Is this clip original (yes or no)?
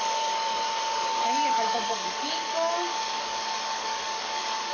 no